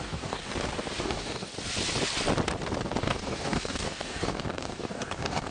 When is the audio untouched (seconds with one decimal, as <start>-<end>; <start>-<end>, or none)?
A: 0.5-1.0; 1.5-3.0

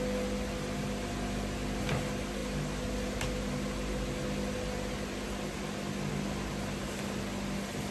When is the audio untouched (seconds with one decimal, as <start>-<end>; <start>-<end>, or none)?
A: 0.0-7.9

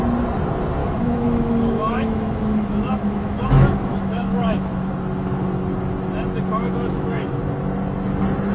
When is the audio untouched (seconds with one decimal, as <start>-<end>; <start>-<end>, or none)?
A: 0.0-0.8; 4.9-6.6; 7.4-8.5

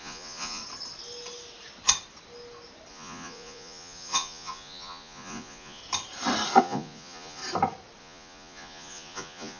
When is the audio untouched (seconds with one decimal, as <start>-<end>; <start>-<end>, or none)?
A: 0.6-2.9; 5.8-6.6; 7.4-8.0

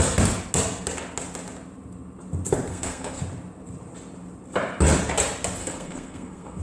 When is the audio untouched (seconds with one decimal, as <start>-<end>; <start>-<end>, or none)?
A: 0.0-2.7; 3.2-5.6

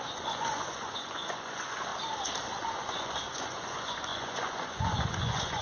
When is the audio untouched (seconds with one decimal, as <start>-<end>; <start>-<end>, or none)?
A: 1.9-2.6